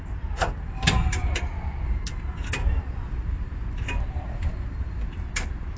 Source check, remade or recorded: recorded